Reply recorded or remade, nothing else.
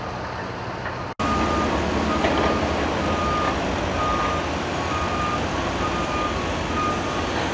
recorded